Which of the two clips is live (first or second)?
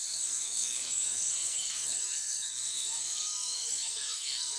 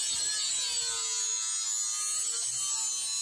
second